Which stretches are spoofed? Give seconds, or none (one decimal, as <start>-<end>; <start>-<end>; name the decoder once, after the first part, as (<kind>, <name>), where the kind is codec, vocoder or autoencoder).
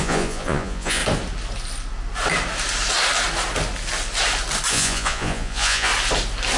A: 0.0-1.0 (vocoder, Vocos); 4.7-5.9